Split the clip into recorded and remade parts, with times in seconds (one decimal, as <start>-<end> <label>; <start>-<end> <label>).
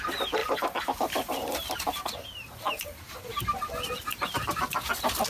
0.0-0.4 recorded; 0.4-3.4 remade; 3.4-5.3 recorded